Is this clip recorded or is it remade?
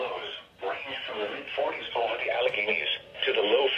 recorded